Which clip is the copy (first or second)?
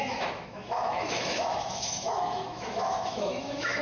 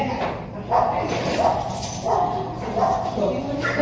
first